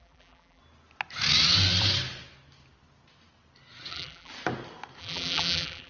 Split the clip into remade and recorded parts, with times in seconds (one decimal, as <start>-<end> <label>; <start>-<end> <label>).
0.0-0.6 remade; 0.6-3.9 recorded; 3.9-4.3 remade; 4.3-5.0 recorded; 5.0-5.9 remade